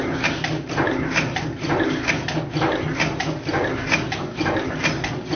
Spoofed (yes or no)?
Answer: no